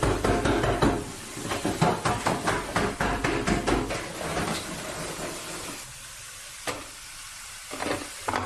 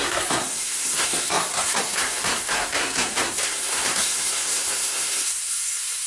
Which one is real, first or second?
first